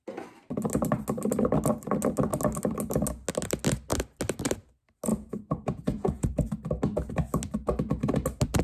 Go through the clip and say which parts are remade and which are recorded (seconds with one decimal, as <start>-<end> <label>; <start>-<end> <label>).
0.0-5.1 recorded; 5.1-6.5 remade; 6.5-8.6 recorded